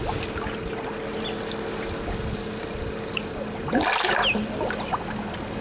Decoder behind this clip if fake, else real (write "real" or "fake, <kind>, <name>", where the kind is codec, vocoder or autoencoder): real